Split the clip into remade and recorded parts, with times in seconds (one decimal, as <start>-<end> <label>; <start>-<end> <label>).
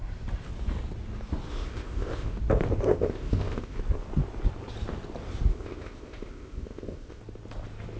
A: 0.0-1.5 recorded; 1.5-2.4 remade; 2.4-2.9 recorded; 2.9-3.8 remade; 3.8-5.5 recorded; 5.5-7.2 remade; 7.2-8.0 recorded